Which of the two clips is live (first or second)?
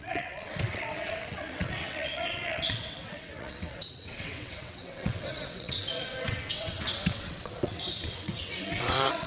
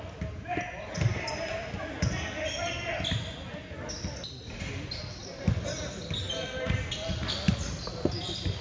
second